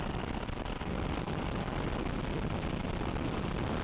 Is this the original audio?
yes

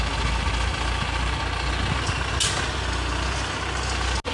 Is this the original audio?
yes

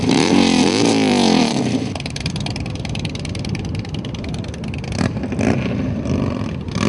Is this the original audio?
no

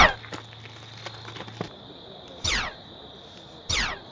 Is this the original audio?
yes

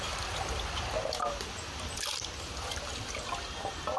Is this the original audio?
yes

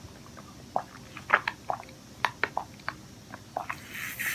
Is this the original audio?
yes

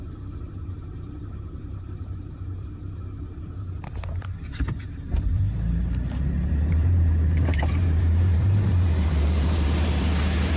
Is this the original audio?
no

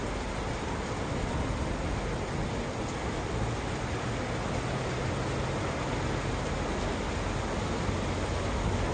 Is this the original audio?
yes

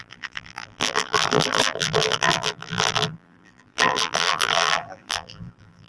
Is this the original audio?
no